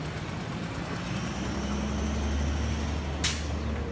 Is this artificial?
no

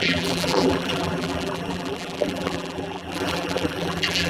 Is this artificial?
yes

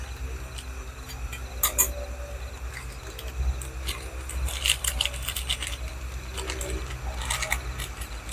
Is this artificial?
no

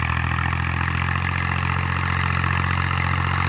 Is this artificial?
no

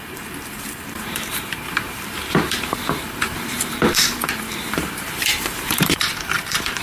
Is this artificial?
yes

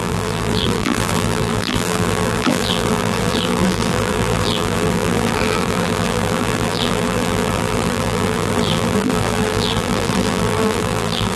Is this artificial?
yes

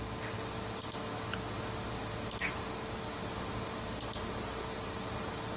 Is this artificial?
no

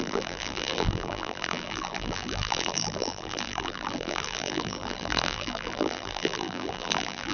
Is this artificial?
yes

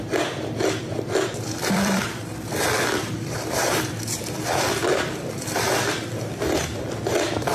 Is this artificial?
yes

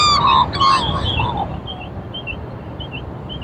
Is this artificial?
no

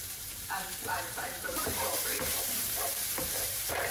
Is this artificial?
yes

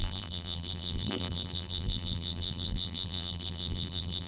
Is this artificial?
yes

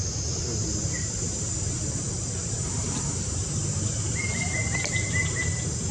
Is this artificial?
yes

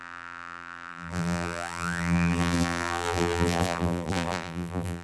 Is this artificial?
yes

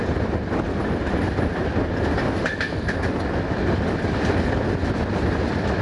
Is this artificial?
no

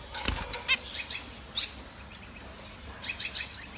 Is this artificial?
no